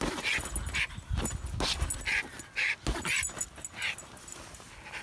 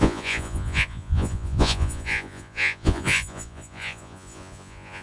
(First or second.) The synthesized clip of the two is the second